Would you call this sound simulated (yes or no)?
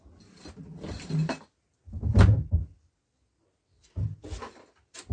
no